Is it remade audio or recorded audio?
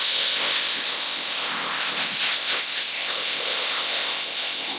remade